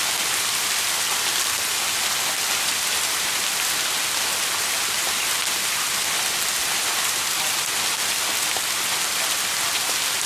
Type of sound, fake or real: real